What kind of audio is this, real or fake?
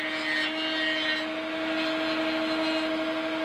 real